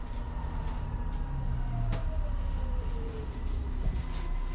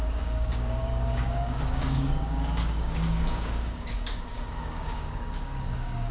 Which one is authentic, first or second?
first